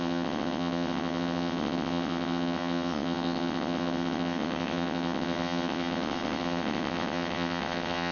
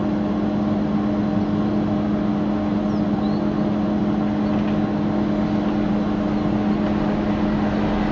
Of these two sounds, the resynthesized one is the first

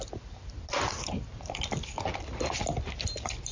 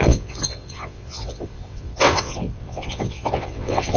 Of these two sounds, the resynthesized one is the second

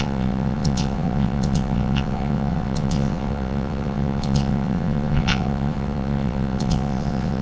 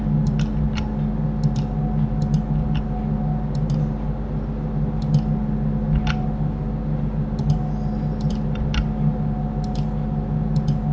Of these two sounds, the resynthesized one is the first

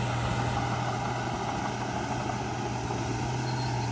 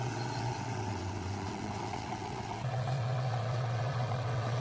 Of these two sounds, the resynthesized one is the second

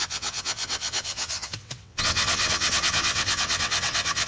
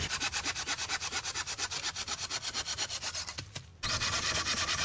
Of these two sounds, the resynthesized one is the first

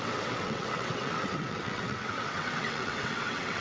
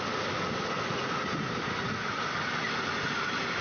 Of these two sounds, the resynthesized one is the first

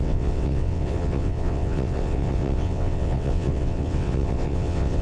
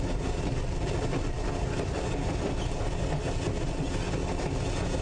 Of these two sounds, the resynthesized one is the first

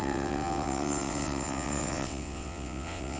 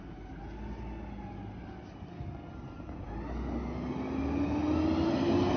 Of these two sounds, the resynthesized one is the first